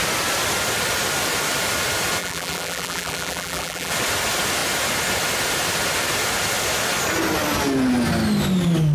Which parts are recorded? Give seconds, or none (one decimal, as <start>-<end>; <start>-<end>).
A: 0.0-2.2; 3.9-8.9